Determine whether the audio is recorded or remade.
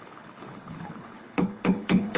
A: remade